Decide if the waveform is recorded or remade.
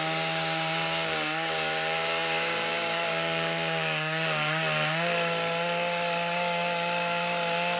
remade